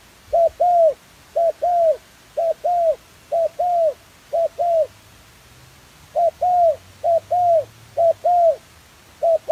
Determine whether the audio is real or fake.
real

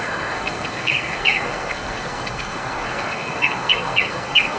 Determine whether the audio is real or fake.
fake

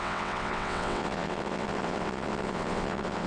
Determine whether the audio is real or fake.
fake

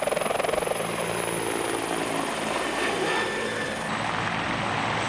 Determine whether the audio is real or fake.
real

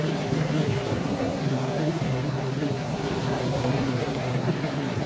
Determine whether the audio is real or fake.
fake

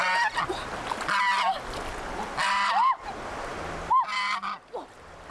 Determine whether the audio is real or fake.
real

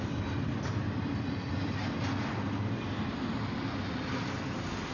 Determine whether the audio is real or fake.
real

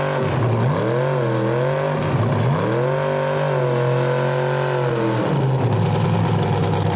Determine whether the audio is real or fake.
real